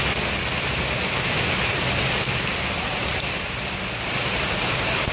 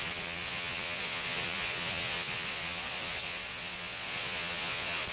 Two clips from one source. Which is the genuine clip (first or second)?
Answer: first